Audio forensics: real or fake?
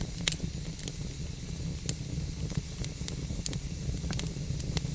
real